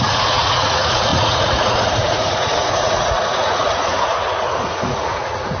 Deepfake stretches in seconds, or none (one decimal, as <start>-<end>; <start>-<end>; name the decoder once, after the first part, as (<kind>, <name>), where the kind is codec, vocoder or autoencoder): 0.0-5.6 (vocoder, Vocos)